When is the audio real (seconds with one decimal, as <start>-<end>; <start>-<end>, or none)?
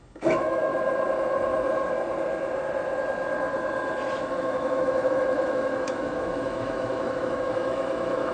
0.7-4.3